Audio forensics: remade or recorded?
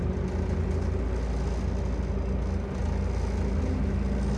recorded